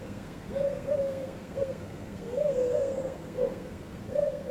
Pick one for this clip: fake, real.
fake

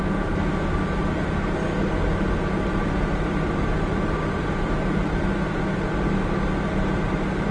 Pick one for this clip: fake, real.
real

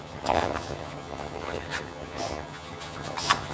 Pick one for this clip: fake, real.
fake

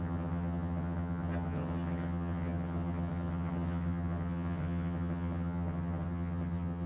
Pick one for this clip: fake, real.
fake